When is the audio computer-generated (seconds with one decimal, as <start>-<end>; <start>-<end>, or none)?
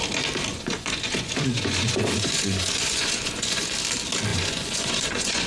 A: 0.5-3.7; 4.3-5.5